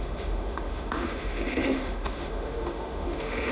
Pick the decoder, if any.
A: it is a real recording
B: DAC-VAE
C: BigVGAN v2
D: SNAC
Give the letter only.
B